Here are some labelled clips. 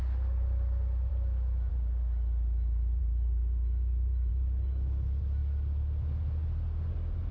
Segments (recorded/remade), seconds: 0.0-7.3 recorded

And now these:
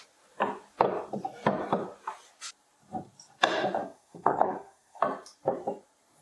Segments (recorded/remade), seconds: 0.0-3.8 recorded; 3.8-5.0 remade; 5.0-6.2 recorded

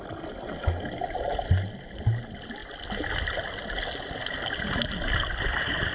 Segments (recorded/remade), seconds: 0.0-5.9 recorded

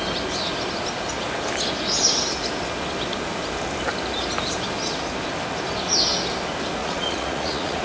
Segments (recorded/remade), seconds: 0.0-6.8 recorded; 6.8-7.8 remade

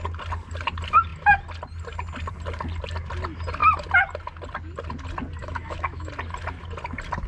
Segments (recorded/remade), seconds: 0.0-5.4 recorded; 5.4-6.1 remade; 6.1-7.3 recorded